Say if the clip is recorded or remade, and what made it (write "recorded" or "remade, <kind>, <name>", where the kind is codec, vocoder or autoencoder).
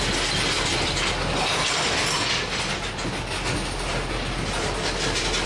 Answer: recorded